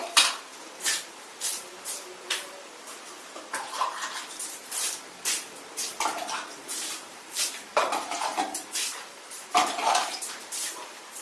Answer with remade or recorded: remade